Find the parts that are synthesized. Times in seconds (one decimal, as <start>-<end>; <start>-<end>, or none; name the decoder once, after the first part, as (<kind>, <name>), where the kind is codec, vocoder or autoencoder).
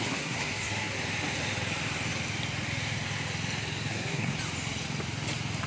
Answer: 0.0-0.9 (codec, SNAC); 3.9-4.3